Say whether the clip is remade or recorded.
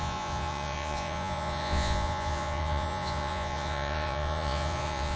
remade